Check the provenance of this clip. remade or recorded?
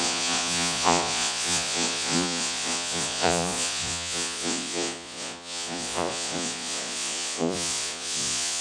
remade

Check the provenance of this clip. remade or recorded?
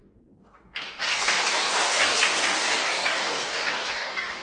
remade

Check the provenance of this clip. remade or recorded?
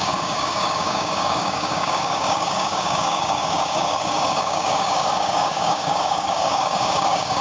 remade